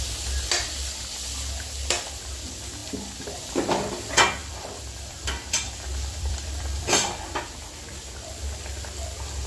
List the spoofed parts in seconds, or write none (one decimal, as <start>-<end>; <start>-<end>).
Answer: 4.4-7.4